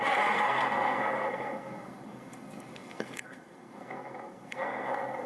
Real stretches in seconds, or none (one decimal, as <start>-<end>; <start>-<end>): none